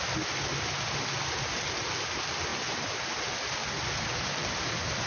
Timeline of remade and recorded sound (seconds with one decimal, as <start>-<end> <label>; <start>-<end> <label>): 0.0-5.1 recorded